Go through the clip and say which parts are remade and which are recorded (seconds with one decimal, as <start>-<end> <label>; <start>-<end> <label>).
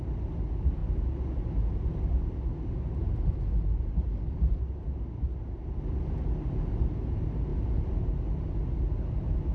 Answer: 0.0-9.5 recorded